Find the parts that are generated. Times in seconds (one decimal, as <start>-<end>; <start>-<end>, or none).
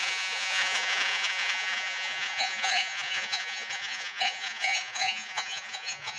0.0-6.2